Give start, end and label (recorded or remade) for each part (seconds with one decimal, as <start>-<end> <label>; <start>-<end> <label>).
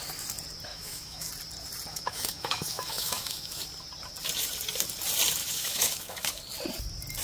0.0-0.7 recorded; 0.7-1.3 remade; 1.3-1.9 recorded; 1.9-3.6 remade; 3.6-5.4 recorded; 5.4-6.4 remade; 6.4-7.2 recorded